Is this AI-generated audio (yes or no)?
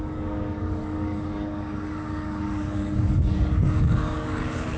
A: yes